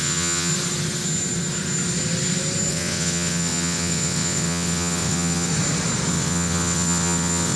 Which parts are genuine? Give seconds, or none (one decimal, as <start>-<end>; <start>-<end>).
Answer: 0.5-2.7; 5.5-6.1